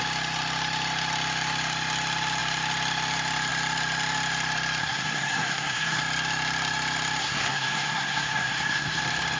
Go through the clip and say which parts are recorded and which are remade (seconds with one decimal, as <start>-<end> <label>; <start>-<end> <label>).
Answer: 0.0-4.8 recorded; 4.8-6.0 remade; 6.0-7.2 recorded; 7.2-9.0 remade; 9.0-9.4 recorded